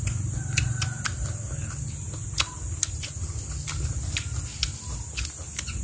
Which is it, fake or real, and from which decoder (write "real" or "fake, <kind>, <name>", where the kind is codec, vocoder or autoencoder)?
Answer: real